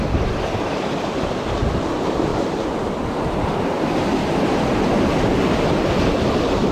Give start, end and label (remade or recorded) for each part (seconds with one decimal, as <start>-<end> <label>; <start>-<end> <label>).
0.0-6.7 recorded